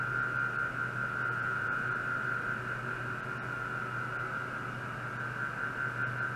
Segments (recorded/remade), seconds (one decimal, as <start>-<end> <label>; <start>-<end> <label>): 0.0-1.3 recorded; 1.3-1.9 remade; 1.9-6.4 recorded

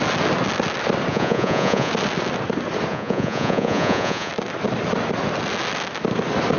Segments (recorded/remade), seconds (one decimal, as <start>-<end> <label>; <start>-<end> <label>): 0.0-1.1 recorded; 1.1-1.9 remade; 1.9-2.9 recorded; 2.9-4.3 remade; 4.3-6.6 recorded

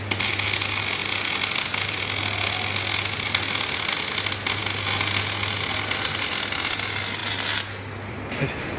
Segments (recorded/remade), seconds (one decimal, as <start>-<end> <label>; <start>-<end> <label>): 0.0-8.8 recorded

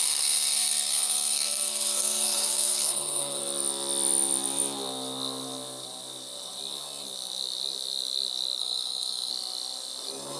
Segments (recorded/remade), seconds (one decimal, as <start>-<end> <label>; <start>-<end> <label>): 0.0-3.4 remade; 3.4-8.6 recorded; 8.6-9.3 remade; 9.3-10.4 recorded

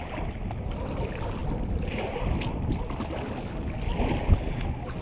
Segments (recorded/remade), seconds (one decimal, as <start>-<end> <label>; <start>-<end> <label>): 0.0-5.0 recorded

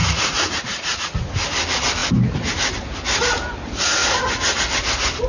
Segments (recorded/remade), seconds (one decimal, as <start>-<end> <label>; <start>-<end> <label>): 0.0-1.3 remade; 1.3-5.3 recorded

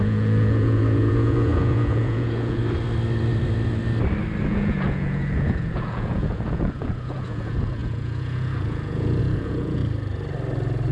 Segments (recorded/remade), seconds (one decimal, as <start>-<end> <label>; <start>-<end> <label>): 0.0-2.6 remade; 2.6-4.5 recorded; 4.5-9.8 remade; 9.8-10.9 recorded

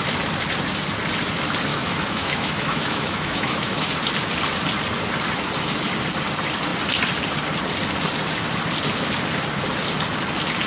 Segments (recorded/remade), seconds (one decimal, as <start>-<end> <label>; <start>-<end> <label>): 0.0-1.7 recorded; 1.7-3.9 remade; 3.9-10.7 recorded